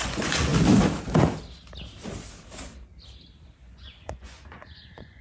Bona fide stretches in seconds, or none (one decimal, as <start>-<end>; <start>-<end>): 0.5-3.6